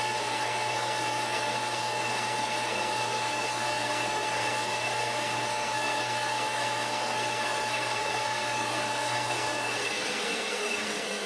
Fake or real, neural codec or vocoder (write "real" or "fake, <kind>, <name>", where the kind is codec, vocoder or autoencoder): fake, codec, SNAC